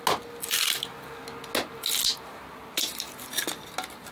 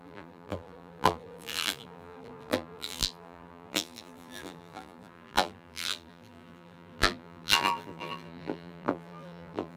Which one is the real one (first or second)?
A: first